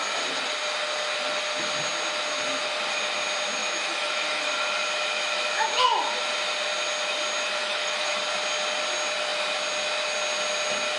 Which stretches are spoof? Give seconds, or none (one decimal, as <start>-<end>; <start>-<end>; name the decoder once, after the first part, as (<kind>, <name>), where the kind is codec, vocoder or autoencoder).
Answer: 3.6-4.5 (autoencoder, DAC-VAE); 7.6-8.1